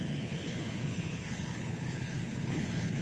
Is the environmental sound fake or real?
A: fake